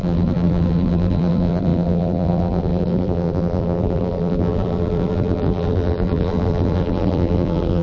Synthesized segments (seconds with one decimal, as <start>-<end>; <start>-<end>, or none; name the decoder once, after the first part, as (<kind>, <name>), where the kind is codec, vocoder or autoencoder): 0.0-7.8 (vocoder, BigVGAN v2)

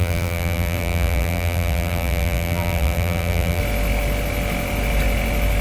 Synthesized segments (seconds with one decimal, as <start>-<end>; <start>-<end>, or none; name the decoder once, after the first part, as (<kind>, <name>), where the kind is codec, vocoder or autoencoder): 0.0-3.6 (vocoder, BigVGAN v2)

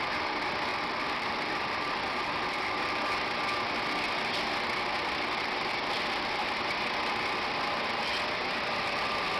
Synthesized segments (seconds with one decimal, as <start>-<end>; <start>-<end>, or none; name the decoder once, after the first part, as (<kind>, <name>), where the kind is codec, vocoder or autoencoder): 0.7-2.8 (vocoder, BigVGAN v2)